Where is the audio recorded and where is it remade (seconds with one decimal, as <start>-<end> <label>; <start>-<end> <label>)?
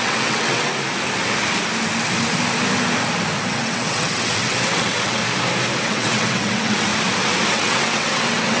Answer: 0.0-0.7 remade; 0.7-3.4 recorded; 3.4-5.2 remade; 5.2-5.8 recorded; 5.8-6.9 remade; 6.9-7.5 recorded; 7.5-8.6 remade